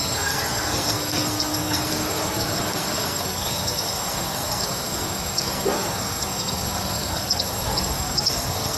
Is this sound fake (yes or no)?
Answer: yes